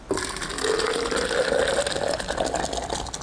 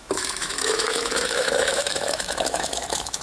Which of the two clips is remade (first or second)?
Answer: second